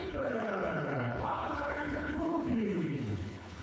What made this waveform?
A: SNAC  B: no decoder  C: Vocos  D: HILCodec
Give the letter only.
D